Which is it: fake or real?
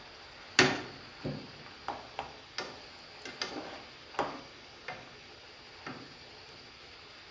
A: real